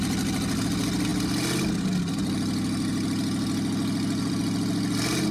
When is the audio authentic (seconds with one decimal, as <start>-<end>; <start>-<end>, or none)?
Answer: 0.0-5.3